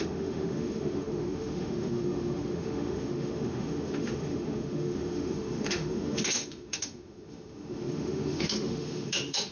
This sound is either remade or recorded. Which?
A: remade